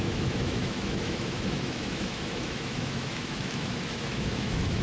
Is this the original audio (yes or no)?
no